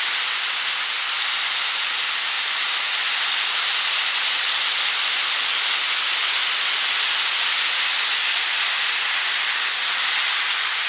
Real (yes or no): yes